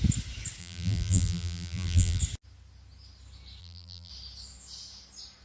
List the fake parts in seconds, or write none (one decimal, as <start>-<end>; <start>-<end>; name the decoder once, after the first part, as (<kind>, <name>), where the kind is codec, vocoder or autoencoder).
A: 0.6-2.2 (vocoder, BigVGAN v2); 3.6-4.1